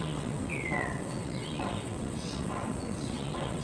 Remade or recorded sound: remade